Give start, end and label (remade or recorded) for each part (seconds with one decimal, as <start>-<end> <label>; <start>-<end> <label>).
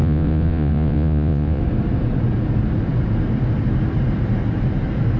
0.0-1.6 remade; 1.6-5.2 recorded